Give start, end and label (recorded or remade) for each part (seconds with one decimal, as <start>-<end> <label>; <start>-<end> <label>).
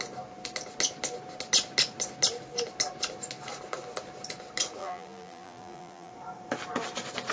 0.0-4.8 recorded; 4.8-6.1 remade; 6.1-7.3 recorded